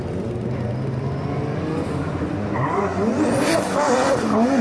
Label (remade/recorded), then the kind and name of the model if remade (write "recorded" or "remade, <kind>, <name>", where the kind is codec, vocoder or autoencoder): recorded